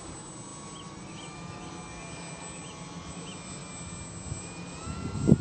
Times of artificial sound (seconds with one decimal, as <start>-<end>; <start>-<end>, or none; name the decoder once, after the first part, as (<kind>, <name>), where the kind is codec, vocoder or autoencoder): none